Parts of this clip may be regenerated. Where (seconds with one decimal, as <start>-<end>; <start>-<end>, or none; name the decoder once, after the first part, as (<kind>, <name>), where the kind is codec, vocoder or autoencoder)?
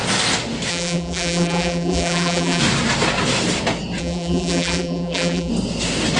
0.7-2.6 (vocoder, BigVGAN v2); 4.0-5.5